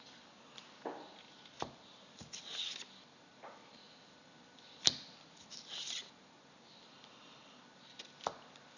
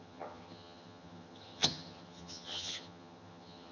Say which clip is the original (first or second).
first